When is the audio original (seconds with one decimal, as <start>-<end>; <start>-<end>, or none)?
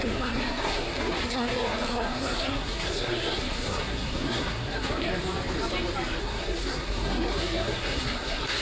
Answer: 5.1-6.2